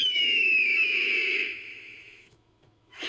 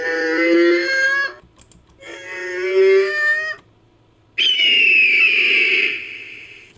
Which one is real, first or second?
second